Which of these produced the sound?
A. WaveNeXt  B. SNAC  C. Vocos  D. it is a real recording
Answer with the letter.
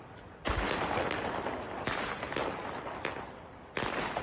D